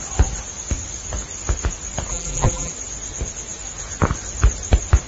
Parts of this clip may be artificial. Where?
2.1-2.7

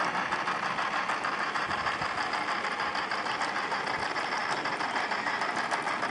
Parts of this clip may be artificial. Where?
none